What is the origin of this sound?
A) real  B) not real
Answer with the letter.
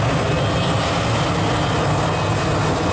A